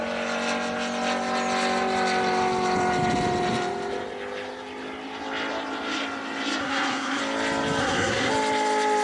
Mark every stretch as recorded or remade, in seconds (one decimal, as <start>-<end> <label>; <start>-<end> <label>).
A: 0.0-6.6 recorded; 6.6-7.2 remade; 7.2-7.8 recorded; 7.8-8.3 remade; 8.3-9.0 recorded